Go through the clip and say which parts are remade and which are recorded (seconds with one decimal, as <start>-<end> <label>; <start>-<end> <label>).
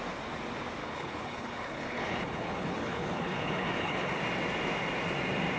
0.0-0.8 recorded; 0.8-4.2 remade; 4.2-5.6 recorded